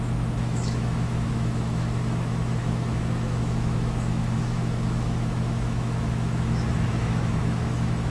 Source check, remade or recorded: remade